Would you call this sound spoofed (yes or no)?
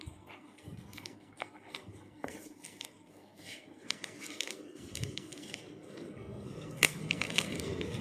yes